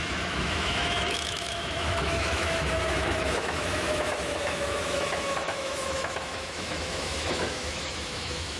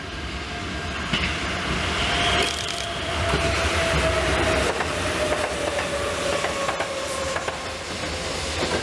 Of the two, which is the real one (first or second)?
second